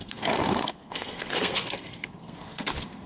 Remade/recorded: remade